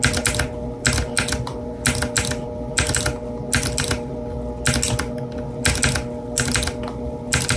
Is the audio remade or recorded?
recorded